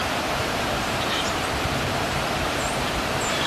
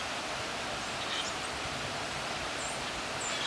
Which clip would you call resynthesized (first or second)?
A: first